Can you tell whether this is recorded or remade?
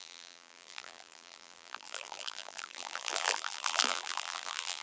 remade